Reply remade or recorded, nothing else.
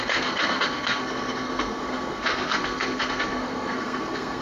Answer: remade